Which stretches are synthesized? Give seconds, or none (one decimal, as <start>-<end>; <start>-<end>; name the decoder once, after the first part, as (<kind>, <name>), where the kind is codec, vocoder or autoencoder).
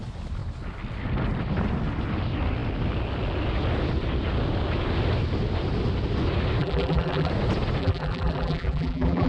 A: 6.6-7.3 (vocoder, BigVGAN v2); 7.8-9.3